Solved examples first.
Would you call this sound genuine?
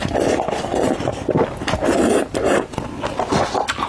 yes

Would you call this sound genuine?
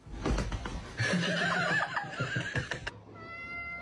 yes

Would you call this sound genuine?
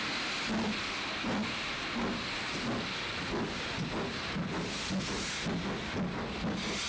yes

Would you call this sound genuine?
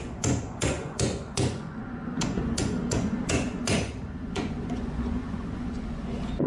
no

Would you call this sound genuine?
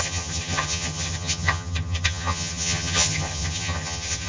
no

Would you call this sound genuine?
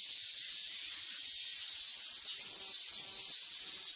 yes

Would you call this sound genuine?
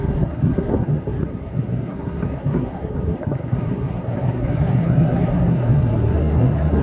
no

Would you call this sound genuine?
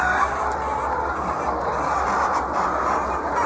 yes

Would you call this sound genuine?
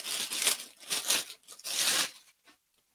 yes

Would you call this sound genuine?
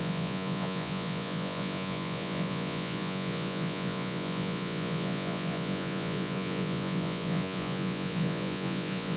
no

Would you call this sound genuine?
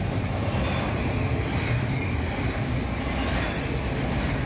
yes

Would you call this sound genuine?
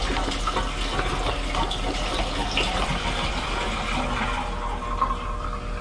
yes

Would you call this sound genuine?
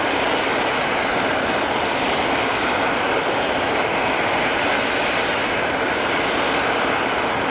yes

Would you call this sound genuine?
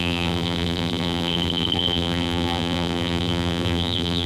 no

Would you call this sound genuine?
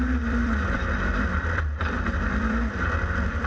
no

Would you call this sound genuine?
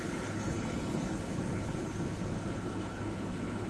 no